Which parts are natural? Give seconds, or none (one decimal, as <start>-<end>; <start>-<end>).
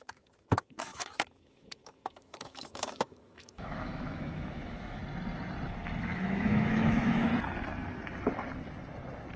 5.0-6.0; 7.3-9.4